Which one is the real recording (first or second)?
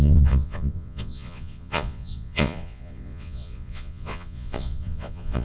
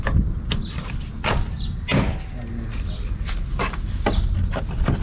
second